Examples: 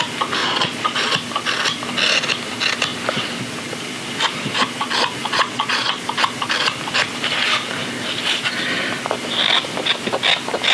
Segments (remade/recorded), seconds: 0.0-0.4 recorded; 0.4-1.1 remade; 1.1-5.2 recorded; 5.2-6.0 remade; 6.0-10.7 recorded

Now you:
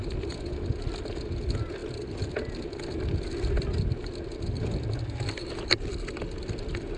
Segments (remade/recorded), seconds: 0.0-7.0 recorded

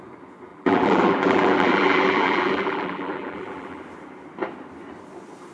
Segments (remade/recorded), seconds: 0.0-0.5 recorded; 0.5-3.8 remade; 3.8-5.5 recorded

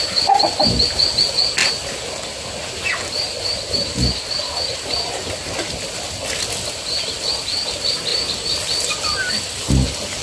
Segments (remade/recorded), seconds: 0.0-10.2 recorded

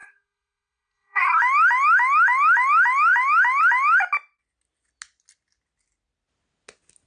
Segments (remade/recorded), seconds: 0.0-1.4 remade; 1.4-7.1 recorded

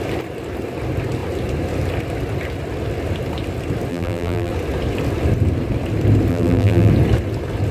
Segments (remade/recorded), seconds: 0.0-3.9 recorded; 3.9-4.5 remade; 4.5-6.3 recorded; 6.3-6.9 remade; 6.9-7.7 recorded